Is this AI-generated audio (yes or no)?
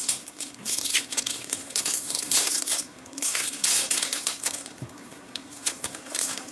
yes